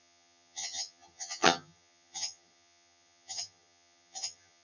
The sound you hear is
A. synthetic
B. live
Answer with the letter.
A